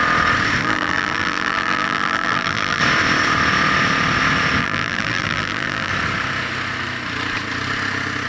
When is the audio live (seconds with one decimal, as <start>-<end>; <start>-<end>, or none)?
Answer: 0.0-0.6; 2.8-4.6; 5.9-8.3